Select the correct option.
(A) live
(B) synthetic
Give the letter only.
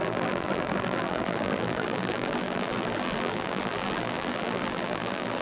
B